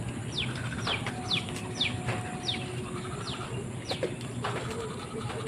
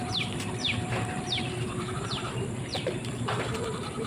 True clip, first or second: first